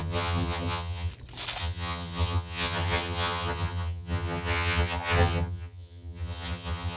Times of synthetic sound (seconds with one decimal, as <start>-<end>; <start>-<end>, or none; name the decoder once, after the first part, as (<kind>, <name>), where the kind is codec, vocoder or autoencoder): 0.0-1.1 (vocoder, HiFi-GAN); 1.6-7.0